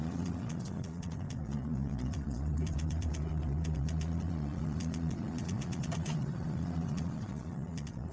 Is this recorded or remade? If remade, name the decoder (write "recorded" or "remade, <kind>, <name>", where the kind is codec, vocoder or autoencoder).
remade, vocoder, Vocos